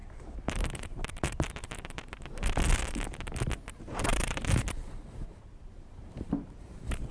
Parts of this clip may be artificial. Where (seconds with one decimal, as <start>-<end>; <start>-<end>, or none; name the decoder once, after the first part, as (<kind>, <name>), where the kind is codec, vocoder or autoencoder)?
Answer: 0.0-1.5 (vocoder, BigVGAN v2); 4.1-7.1